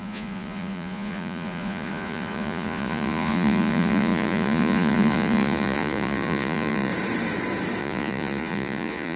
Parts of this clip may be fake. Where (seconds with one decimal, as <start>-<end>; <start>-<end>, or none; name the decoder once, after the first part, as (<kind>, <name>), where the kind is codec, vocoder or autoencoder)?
0.0-6.9 (vocoder, Vocos); 7.8-9.2